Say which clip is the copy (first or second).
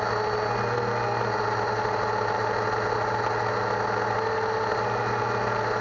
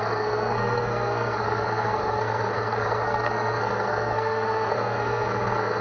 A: second